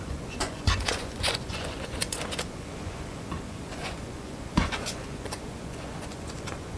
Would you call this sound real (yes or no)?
no